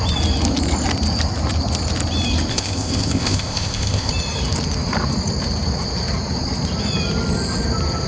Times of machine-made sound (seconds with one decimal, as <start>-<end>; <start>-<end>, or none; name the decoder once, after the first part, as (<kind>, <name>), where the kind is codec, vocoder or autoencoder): 2.5-4.1 (codec, ZipCodec)